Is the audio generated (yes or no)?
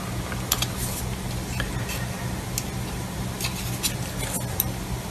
no